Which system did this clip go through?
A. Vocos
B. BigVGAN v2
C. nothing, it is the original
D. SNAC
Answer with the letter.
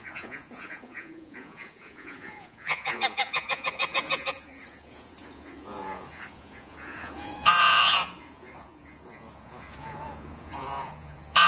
A